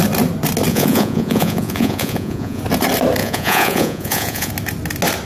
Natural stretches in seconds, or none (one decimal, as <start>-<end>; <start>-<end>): 0.0-0.7; 2.6-3.2; 4.5-5.3